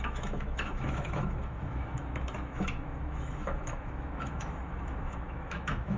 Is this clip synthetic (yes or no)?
yes